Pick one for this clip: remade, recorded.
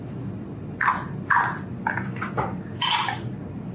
recorded